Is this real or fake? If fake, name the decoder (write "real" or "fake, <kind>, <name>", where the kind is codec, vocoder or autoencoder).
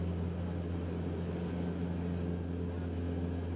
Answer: real